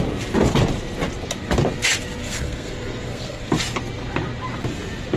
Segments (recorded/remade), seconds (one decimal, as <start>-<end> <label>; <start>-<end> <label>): 0.0-2.2 recorded; 2.2-3.5 remade; 3.5-5.2 recorded